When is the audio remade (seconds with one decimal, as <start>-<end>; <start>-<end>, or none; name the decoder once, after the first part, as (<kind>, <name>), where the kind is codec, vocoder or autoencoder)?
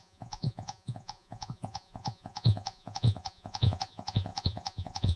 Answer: 0.0-5.2 (vocoder, Vocos)